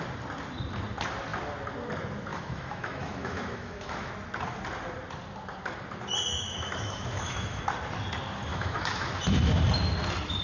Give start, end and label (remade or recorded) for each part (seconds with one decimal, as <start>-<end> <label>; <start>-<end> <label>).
0.0-2.3 recorded; 2.3-4.1 remade; 4.1-6.3 recorded; 6.3-7.6 remade; 7.6-8.5 recorded; 8.5-9.1 remade; 9.1-10.4 recorded

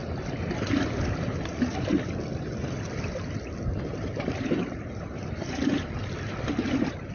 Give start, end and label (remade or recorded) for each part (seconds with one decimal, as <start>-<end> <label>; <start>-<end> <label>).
0.0-7.1 remade

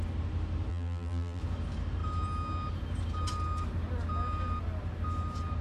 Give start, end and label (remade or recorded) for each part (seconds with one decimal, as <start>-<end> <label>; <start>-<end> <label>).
0.0-0.7 recorded; 0.7-1.4 remade; 1.4-5.6 recorded

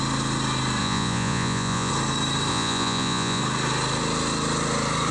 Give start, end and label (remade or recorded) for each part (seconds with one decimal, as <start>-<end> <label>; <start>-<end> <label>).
0.0-0.8 recorded; 0.8-1.9 remade; 1.9-2.5 recorded; 2.5-3.4 remade; 3.4-5.1 recorded

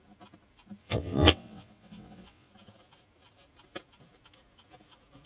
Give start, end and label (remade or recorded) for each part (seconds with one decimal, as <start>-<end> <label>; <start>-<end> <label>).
0.0-0.8 recorded; 0.8-2.5 remade; 2.5-5.3 recorded

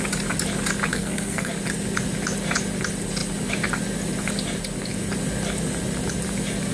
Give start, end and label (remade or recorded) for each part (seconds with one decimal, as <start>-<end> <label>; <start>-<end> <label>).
0.0-0.9 recorded; 0.9-1.5 remade; 1.5-6.7 recorded

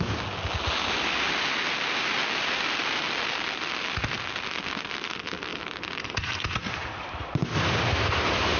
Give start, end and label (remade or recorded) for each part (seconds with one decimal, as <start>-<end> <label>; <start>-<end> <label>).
0.0-7.4 recorded; 7.4-8.1 remade; 8.1-8.6 recorded